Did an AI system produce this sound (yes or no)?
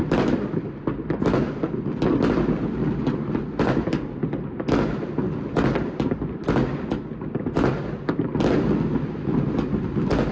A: no